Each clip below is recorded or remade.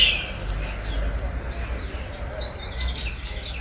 recorded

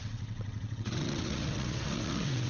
remade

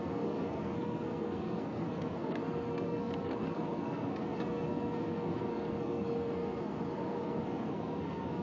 remade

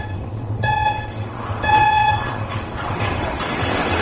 remade